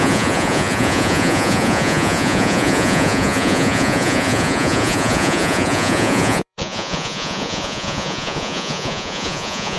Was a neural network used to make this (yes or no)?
yes